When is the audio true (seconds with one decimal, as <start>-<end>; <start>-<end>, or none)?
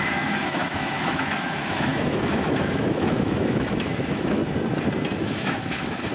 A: 4.4-5.2